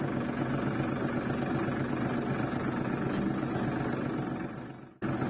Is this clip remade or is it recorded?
recorded